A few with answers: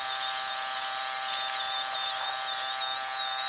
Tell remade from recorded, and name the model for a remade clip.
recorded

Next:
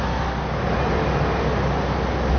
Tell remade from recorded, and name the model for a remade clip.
recorded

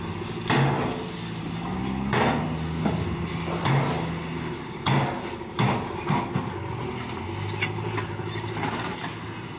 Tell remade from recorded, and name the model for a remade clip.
recorded